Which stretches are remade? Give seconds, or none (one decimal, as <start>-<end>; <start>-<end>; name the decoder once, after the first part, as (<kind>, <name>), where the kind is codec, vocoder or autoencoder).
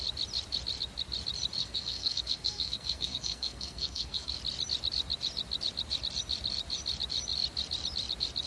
1.6-4.3 (codec, SNAC)